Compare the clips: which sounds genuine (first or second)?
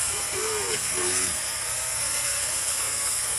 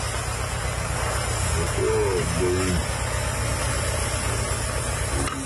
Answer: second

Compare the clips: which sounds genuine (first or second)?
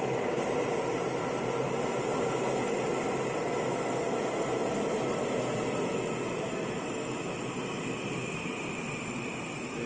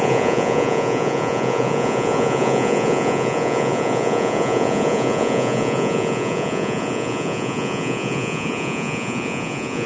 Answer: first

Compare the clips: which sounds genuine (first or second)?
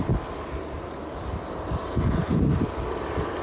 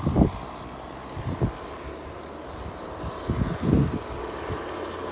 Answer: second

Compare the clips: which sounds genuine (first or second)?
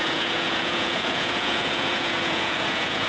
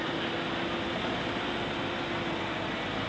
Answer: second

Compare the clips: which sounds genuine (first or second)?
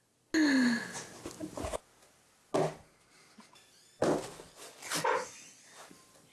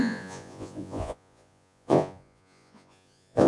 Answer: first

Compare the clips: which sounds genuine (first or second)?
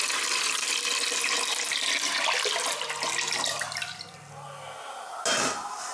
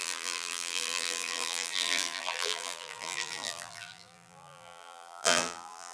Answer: first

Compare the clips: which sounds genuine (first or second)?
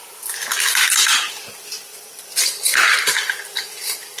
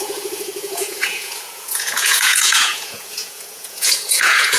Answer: first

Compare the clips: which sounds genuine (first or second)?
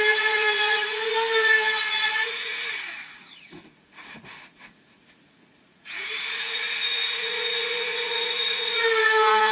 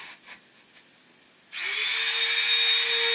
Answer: second